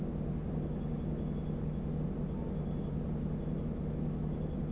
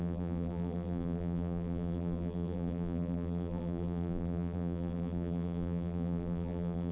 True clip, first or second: first